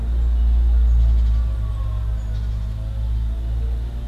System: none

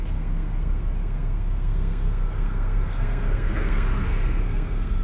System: codec, SNAC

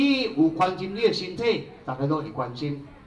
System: none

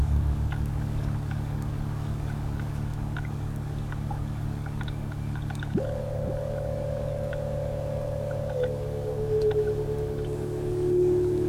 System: codec, DAC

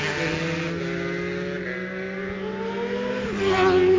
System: none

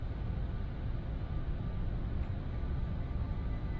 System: none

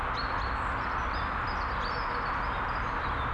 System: none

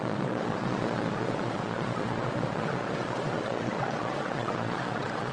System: vocoder, Vocos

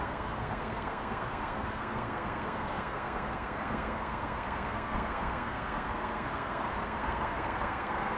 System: codec, SNAC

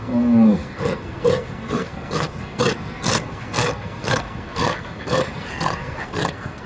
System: codec, SNAC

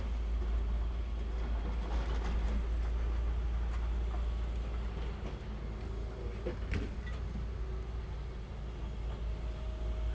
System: none